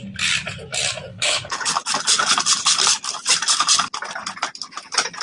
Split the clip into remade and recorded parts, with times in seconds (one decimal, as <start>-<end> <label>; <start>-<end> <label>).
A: 0.0-1.1 recorded; 1.1-1.7 remade; 1.7-5.2 recorded